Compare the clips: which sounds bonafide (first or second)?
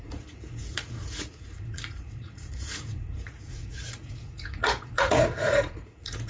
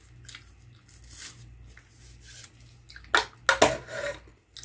second